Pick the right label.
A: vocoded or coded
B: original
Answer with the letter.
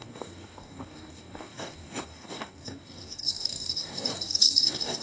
A